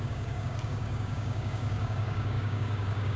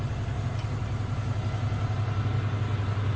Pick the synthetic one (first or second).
first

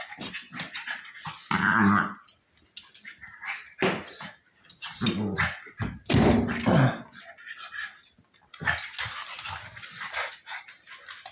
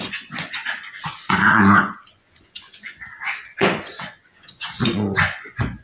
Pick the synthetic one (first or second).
second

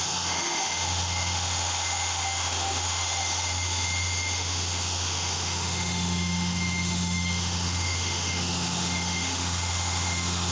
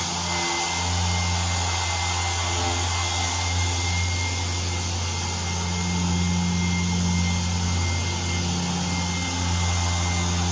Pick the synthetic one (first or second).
first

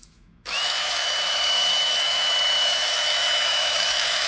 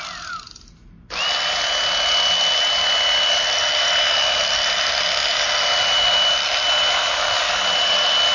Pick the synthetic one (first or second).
first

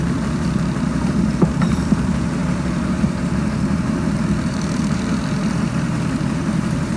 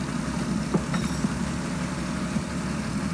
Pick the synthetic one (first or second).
first